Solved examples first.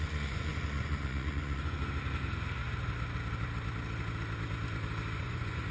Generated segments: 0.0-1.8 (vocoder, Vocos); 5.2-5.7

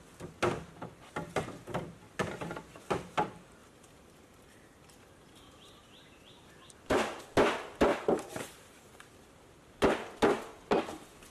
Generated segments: 3.6-7.2 (vocoder, BigVGAN v2); 7.9-9.1

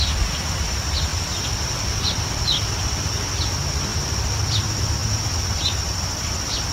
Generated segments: 1.1-2.7 (vocoder, BigVGAN v2); 3.9-4.4; 5.0-5.7